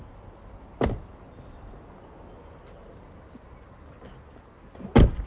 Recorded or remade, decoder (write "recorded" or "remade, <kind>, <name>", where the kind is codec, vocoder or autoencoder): recorded